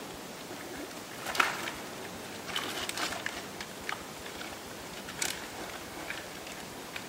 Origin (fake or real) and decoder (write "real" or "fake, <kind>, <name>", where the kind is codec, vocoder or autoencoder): real